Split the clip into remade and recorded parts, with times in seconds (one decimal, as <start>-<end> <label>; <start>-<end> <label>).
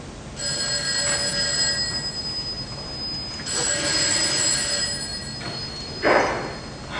0.0-7.0 recorded